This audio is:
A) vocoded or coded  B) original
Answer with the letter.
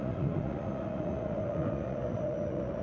A